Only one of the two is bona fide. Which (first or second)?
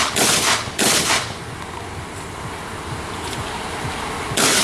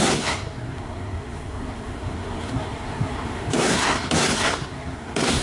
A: first